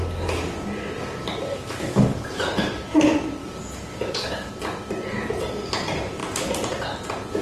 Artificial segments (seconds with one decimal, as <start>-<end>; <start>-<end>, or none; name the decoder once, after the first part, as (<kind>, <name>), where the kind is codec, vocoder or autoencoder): 1.5-2.3 (codec, DAC); 3.4-4.5